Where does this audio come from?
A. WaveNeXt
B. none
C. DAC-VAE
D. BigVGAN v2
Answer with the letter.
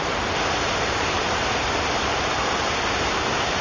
D